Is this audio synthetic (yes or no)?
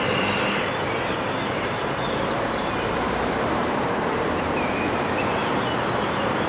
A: yes